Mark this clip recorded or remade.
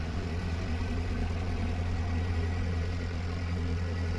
remade